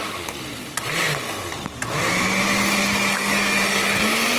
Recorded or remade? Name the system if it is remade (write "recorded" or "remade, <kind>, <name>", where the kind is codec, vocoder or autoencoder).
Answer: recorded